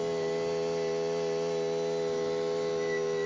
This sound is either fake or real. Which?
real